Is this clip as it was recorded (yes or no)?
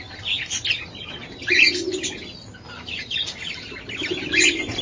yes